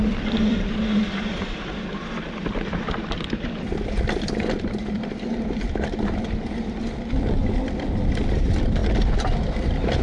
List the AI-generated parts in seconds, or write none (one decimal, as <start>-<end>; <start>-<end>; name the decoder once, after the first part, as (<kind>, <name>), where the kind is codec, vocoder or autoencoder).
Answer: 0.0-8.8 (vocoder, BigVGAN v2)